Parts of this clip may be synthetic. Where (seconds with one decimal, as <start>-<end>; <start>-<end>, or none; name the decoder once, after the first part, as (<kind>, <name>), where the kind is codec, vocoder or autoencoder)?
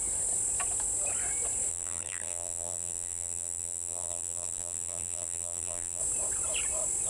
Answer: 1.7-6.0 (vocoder, BigVGAN v2)